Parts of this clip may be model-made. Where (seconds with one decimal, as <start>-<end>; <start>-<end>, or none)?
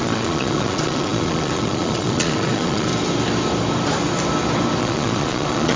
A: 0.0-2.9; 4.8-5.8